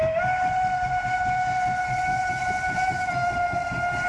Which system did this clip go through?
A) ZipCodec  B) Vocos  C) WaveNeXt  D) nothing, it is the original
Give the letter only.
D